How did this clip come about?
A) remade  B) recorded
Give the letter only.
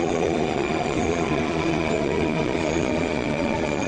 A